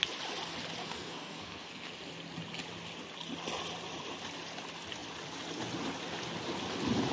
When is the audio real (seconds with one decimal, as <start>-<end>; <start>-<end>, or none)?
0.0-0.8; 1.9-7.1